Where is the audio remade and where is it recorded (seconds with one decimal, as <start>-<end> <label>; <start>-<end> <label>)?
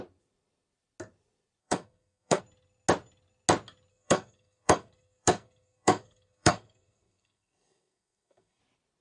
0.0-1.6 recorded; 1.6-2.4 remade; 2.4-3.9 recorded; 3.9-8.6 remade; 8.6-9.0 recorded